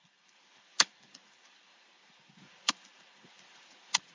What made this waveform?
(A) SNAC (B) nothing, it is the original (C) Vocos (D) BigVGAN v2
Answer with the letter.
C